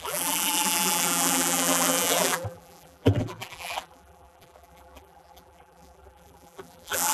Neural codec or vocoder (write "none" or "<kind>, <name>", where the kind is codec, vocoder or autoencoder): vocoder, BigVGAN v2